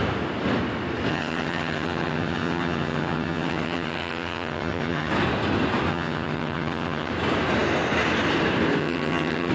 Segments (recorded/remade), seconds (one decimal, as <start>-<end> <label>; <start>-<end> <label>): 0.0-1.1 recorded; 1.1-5.1 remade; 5.1-5.9 recorded; 5.9-7.1 remade; 7.1-8.8 recorded; 8.8-9.5 remade